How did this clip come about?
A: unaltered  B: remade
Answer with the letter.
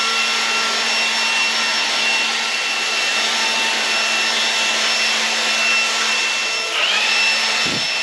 A